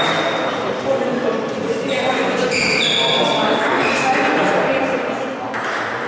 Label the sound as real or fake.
real